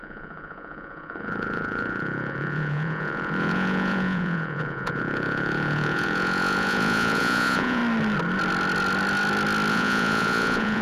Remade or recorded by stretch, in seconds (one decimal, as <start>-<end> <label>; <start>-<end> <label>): 0.0-7.8 remade; 7.8-9.7 recorded; 9.7-10.8 remade